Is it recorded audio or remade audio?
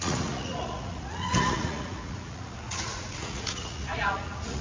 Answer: remade